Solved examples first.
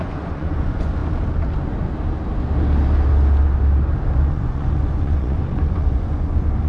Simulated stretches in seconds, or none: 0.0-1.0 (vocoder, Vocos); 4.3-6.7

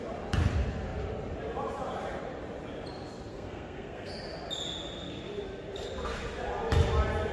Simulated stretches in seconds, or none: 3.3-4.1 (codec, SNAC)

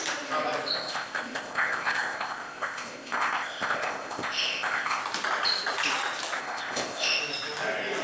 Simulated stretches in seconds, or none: 0.7-5.0 (codec, ZipCodec); 6.4-7.2